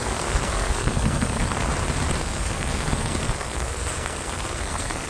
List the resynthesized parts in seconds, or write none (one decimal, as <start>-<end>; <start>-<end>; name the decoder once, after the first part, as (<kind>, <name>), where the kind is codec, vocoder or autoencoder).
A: 0.0-1.7 (codec, SNAC); 2.2-5.1